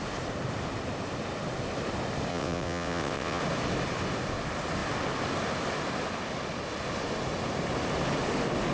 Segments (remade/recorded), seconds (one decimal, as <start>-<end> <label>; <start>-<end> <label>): 0.0-2.3 recorded; 2.3-3.4 remade; 3.4-8.7 recorded

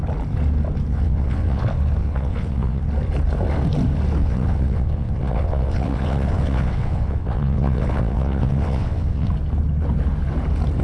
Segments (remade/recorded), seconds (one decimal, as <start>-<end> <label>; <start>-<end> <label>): 0.0-0.9 recorded; 0.9-1.6 remade; 1.6-2.0 recorded; 2.0-2.8 remade; 2.8-4.2 recorded; 4.2-9.3 remade; 9.3-10.8 recorded